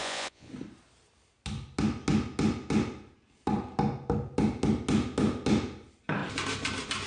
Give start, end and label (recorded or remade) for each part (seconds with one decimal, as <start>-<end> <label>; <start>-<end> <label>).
0.0-0.5 remade; 0.5-7.1 recorded